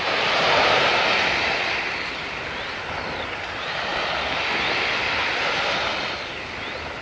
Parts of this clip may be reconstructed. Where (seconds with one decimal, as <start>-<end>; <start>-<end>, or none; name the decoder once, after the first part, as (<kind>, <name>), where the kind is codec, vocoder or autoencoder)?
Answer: none